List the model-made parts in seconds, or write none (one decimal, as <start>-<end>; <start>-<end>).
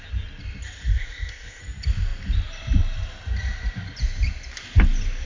0.9-1.6